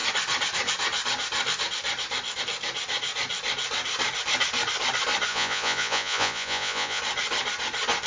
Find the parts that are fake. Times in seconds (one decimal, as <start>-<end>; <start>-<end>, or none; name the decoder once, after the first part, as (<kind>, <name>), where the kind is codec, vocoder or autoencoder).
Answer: 5.3-7.0 (vocoder, Vocos)